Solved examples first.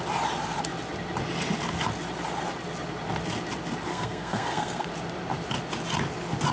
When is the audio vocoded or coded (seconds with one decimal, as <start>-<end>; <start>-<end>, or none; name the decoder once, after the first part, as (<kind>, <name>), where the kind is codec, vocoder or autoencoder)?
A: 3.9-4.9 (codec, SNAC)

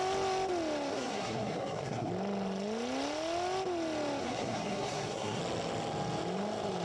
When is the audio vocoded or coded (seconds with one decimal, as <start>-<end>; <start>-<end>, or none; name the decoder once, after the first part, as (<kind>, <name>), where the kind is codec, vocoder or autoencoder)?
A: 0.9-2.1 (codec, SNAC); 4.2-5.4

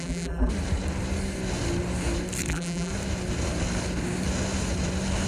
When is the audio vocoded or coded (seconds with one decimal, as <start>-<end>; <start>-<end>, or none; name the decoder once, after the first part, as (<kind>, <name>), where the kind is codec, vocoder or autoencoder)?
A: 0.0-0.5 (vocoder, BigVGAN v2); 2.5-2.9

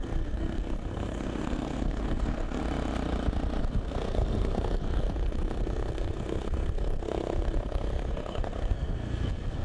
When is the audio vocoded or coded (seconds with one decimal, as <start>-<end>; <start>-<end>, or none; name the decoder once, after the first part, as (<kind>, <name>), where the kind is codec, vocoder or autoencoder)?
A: 0.0-2.6 (codec, SNAC); 3.6-9.6

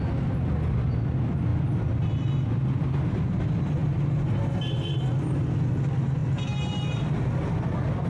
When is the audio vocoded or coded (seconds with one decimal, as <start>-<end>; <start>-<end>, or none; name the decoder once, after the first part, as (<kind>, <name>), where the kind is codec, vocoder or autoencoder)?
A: none